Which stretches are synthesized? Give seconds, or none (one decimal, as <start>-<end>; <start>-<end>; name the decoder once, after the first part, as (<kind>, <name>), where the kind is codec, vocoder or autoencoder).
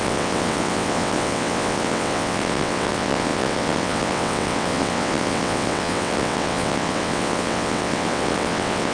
0.0-8.9 (vocoder, WaveNeXt)